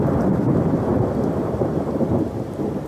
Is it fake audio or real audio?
fake